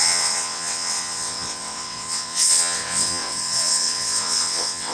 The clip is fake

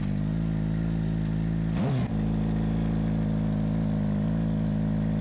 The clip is real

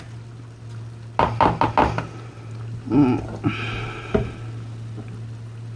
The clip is real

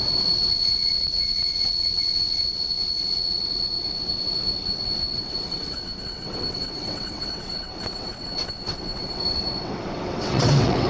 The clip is fake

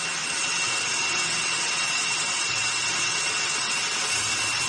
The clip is fake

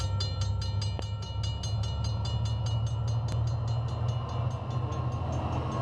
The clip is real